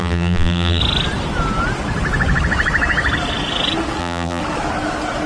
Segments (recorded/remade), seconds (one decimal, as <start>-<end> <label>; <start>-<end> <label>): 0.0-0.8 remade; 0.8-4.0 recorded; 4.0-4.4 remade; 4.4-5.3 recorded